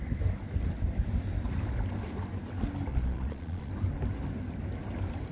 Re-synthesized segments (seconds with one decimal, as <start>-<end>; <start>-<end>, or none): 2.9-3.7